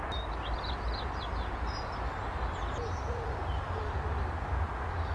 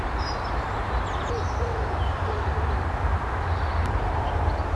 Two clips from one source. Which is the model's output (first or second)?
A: second